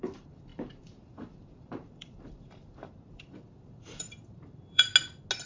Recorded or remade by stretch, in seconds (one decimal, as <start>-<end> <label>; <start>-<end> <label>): 0.0-4.9 remade; 4.9-5.5 recorded